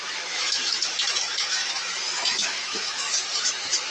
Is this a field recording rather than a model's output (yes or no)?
no